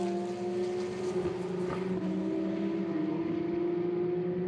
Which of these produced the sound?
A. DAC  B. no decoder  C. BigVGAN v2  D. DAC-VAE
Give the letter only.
B